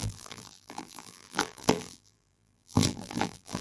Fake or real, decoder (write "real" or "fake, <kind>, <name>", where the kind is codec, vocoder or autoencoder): fake, vocoder, BigVGAN v2